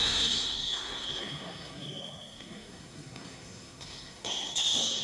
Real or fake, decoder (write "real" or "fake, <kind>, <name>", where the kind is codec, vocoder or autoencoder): fake, codec, SNAC